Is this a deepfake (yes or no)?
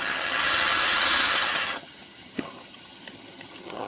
yes